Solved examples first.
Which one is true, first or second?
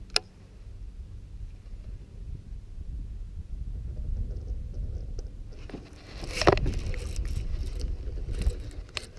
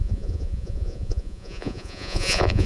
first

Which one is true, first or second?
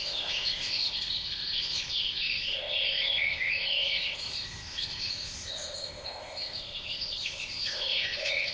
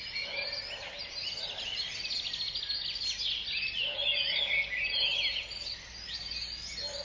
second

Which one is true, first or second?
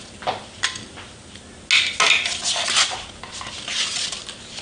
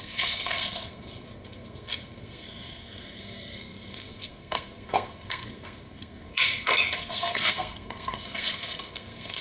first